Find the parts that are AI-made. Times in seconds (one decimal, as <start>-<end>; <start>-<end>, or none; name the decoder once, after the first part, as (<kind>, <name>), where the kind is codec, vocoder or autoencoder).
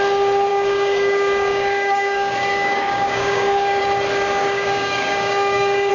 0.5-3.8 (codec, DAC); 4.4-5.9